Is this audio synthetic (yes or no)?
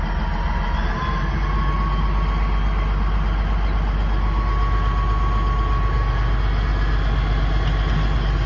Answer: no